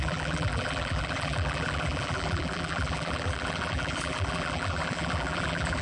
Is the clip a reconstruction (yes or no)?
yes